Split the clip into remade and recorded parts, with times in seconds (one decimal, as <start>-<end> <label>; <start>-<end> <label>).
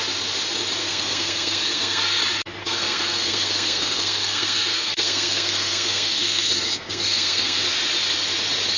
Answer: 0.0-0.8 recorded; 0.8-2.2 remade; 2.2-2.6 recorded; 2.6-7.6 remade; 7.6-8.8 recorded